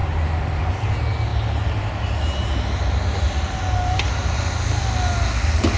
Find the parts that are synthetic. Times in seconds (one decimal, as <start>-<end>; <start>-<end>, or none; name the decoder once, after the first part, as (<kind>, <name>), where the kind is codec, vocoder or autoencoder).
none